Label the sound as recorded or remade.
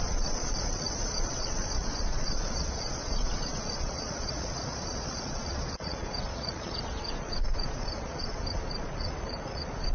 remade